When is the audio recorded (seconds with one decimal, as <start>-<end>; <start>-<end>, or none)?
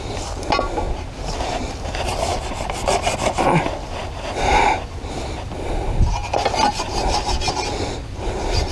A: 0.0-8.7